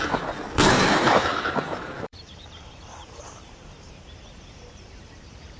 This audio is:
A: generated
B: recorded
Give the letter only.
A